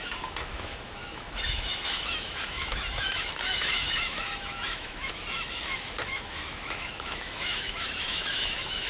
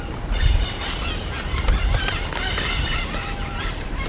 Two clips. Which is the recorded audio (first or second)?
second